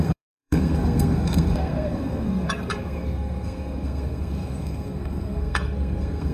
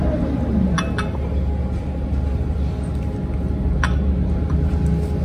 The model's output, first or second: first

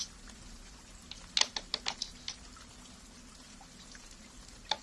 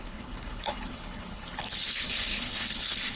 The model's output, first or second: second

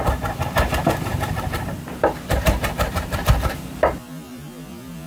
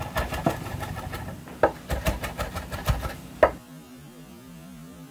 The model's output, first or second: first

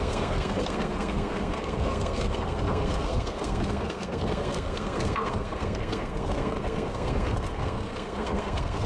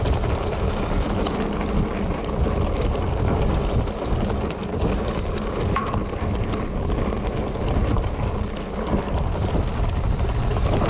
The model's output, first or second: first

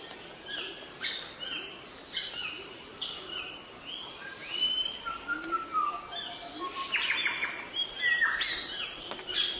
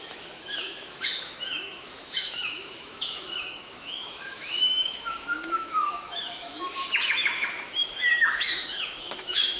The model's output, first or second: second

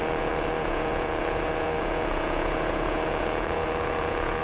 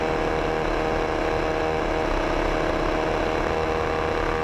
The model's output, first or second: first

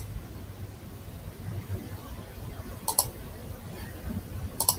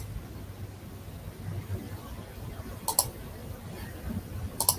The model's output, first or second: first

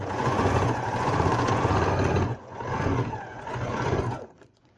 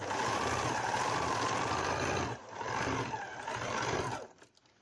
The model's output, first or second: first